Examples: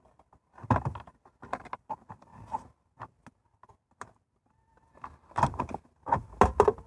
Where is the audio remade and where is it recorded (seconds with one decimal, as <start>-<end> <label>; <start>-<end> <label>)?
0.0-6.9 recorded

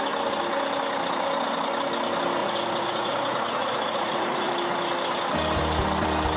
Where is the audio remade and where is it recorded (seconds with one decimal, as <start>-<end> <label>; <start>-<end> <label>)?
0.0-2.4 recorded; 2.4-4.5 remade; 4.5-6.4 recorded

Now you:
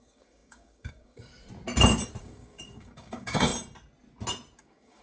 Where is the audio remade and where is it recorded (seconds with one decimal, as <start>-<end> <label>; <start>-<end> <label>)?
0.0-1.3 remade; 1.3-2.2 recorded; 2.2-3.5 remade; 3.5-4.6 recorded; 4.6-5.0 remade

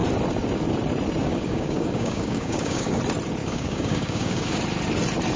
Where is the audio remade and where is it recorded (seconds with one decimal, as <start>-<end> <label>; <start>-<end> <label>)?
0.0-1.2 recorded; 1.2-3.0 remade; 3.0-3.4 recorded; 3.4-4.6 remade; 4.6-5.4 recorded